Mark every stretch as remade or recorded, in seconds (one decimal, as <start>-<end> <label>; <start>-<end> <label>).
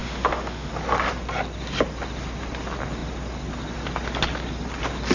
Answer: 0.0-0.7 remade; 0.7-5.1 recorded